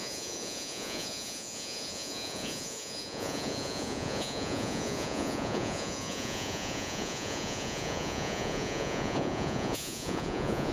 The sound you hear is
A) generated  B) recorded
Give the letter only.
A